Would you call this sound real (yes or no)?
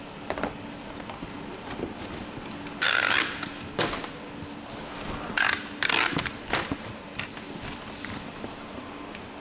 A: yes